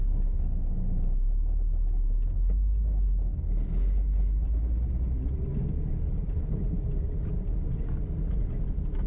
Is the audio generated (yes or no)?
no